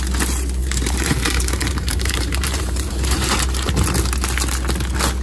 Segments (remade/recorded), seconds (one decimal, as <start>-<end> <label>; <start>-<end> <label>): 0.0-0.6 recorded; 0.6-3.7 remade; 3.7-5.2 recorded